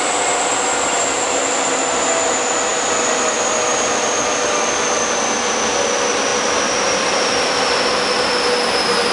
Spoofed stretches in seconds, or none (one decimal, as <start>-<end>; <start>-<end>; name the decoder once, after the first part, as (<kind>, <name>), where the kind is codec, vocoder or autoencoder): 6.3-7.7 (vocoder, BigVGAN v2)